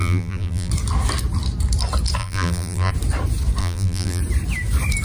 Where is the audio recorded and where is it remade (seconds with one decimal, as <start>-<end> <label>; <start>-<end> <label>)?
0.0-0.7 remade; 0.7-2.2 recorded; 2.2-2.9 remade; 2.9-3.6 recorded; 3.6-4.2 remade; 4.2-5.0 recorded